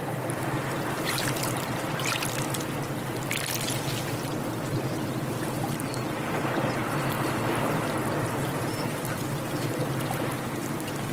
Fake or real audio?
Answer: real